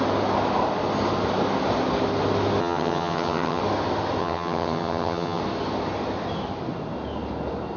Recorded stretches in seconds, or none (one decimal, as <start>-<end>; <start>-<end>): 0.0-2.6; 3.6-4.2; 5.4-7.8